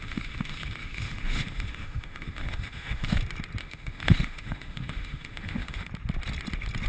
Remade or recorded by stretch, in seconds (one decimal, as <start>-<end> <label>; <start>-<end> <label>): 0.0-3.2 remade; 3.2-3.6 recorded; 3.6-5.9 remade; 5.9-6.9 recorded